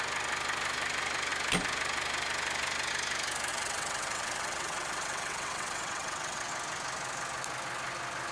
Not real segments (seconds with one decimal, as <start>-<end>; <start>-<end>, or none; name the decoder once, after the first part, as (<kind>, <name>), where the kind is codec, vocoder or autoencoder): 3.5-6.5 (vocoder, WaveNeXt)